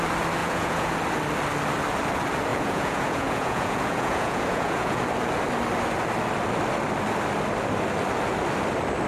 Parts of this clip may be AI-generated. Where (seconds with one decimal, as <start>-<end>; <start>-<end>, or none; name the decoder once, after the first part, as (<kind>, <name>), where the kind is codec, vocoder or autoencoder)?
0.4-0.9 (vocoder, Vocos); 2.5-5.0